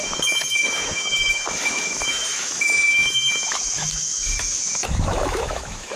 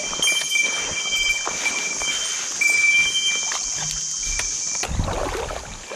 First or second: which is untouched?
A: second